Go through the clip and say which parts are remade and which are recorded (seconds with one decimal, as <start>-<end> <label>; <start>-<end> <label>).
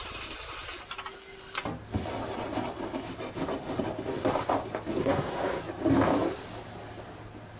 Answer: 0.0-5.0 recorded; 5.0-5.6 remade; 5.6-7.6 recorded